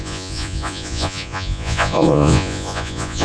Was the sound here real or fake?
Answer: fake